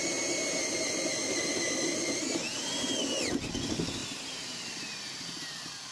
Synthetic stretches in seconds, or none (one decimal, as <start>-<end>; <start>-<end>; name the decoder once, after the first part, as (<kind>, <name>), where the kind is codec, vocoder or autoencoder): 4.0-5.4 (vocoder, BigVGAN v2)

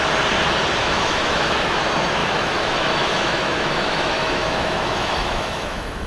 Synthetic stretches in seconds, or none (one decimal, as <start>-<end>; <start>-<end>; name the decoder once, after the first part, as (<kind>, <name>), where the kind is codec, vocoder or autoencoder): 0.8-1.8 (autoencoder, DAC-VAE); 2.2-6.1

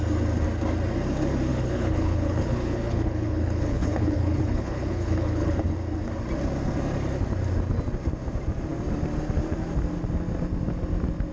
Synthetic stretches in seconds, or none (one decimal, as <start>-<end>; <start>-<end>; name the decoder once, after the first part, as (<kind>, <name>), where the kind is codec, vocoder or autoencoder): 1.5-5.6 (codec, HILCodec)